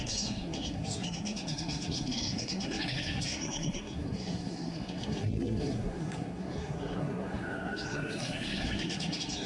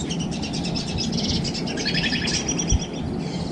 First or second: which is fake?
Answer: first